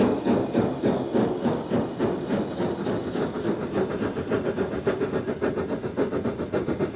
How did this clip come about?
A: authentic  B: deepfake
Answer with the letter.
A